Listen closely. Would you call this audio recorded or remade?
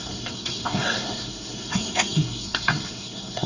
remade